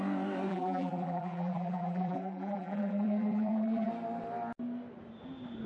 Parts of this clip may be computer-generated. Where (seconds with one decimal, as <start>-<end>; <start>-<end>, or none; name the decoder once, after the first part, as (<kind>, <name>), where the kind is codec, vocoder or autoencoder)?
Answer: 0.5-3.9 (vocoder, BigVGAN v2)